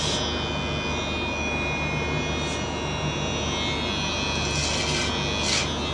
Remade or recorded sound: recorded